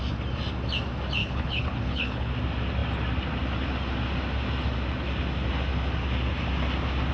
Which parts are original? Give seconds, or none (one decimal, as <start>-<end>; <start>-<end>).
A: 0.0-1.2; 2.3-7.1